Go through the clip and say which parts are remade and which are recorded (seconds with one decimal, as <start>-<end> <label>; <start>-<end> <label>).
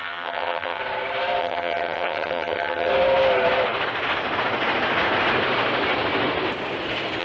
0.0-0.8 remade; 0.8-1.4 recorded; 1.4-2.9 remade; 2.9-7.2 recorded